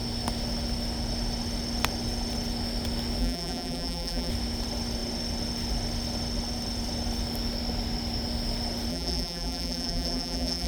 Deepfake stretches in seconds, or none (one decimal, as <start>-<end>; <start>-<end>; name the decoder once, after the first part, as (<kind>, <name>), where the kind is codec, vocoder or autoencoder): 3.2-4.3 (vocoder, BigVGAN v2); 8.9-10.7